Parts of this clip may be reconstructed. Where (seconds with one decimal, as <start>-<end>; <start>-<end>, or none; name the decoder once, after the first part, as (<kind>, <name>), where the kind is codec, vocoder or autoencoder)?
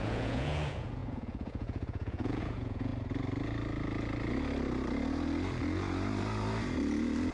0.0-2.9 (vocoder, Vocos)